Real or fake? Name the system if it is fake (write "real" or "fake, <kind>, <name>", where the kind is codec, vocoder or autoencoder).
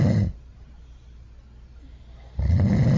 real